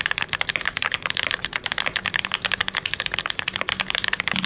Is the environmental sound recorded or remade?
recorded